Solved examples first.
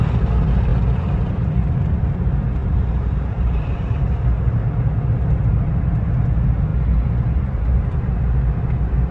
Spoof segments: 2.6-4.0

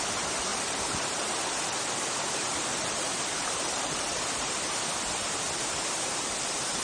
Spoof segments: 0.5-4.6

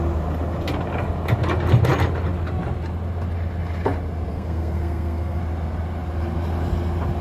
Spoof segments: 4.3-5.4

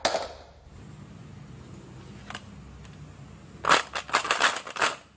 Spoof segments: none

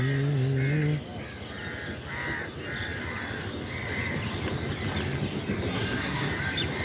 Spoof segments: 5.7-6.3

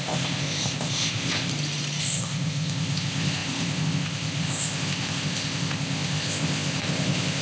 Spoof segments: 0.0-1.5; 2.0-7.4

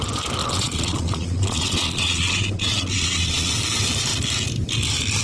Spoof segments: 0.4-3.5